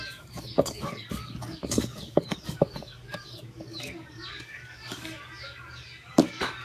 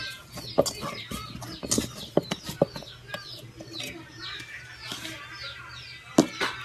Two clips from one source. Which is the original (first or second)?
second